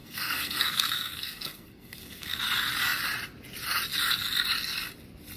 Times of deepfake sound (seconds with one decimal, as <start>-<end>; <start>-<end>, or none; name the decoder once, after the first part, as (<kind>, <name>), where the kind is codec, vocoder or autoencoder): 0.0-2.4 (codec, SNAC)